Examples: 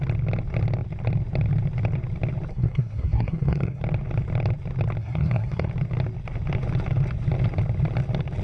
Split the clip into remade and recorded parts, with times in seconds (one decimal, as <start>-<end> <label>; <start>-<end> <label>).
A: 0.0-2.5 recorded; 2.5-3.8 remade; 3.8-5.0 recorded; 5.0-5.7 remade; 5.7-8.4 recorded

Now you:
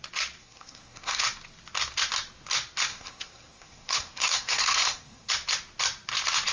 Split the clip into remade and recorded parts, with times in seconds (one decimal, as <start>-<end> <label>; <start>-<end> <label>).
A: 0.0-0.4 recorded; 0.4-1.2 remade; 1.2-2.9 recorded; 2.9-5.3 remade; 5.3-6.5 recorded

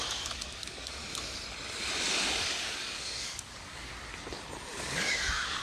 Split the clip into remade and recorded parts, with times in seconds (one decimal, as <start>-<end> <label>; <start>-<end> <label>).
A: 0.0-1.0 remade; 1.0-2.3 recorded; 2.3-3.9 remade; 3.9-4.8 recorded; 4.8-5.6 remade

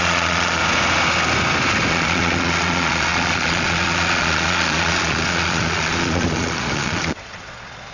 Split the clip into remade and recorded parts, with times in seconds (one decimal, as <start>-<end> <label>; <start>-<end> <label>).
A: 0.0-0.6 remade; 0.6-1.9 recorded; 1.9-7.9 remade